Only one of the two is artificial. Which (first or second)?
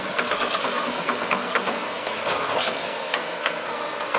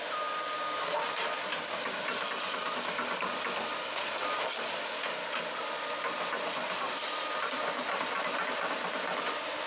first